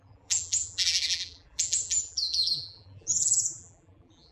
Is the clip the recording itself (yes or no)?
no